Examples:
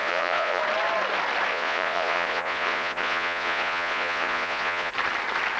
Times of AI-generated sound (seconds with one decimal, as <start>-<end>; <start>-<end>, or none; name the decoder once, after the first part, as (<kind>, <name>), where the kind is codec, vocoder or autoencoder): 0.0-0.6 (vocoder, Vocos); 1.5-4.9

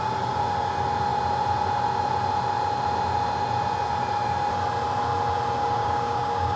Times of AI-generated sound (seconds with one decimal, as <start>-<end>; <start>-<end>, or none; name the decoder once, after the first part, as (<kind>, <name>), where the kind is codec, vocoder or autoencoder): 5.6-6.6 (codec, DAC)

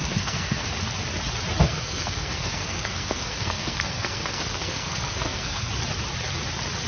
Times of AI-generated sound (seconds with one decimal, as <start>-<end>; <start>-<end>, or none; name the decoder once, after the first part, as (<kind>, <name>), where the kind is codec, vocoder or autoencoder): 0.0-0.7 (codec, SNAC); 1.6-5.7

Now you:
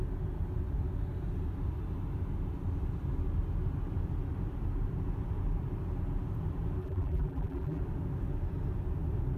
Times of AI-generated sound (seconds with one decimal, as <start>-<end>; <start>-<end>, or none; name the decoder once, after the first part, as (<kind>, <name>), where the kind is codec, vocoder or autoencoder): 6.8-7.8 (vocoder, BigVGAN v2)